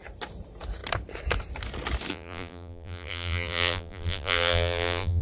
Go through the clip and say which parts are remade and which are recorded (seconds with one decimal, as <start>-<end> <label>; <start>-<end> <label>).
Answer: 0.0-2.1 recorded; 2.1-5.2 remade